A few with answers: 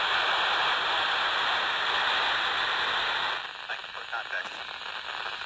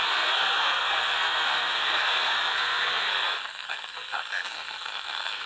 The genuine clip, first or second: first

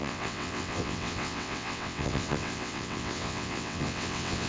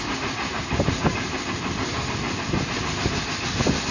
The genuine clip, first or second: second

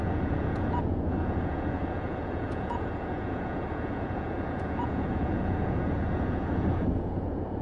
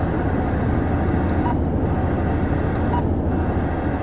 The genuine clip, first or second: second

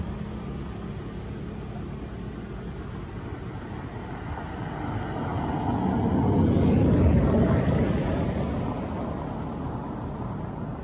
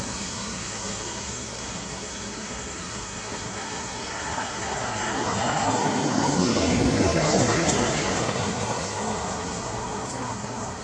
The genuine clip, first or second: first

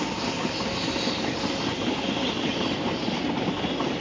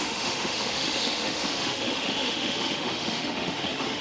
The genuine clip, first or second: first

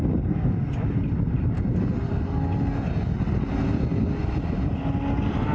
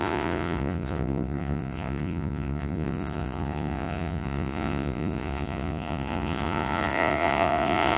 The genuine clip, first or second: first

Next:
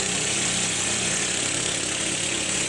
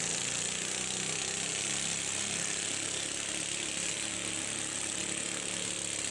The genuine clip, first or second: second